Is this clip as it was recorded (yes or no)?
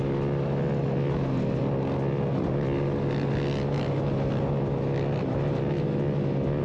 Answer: yes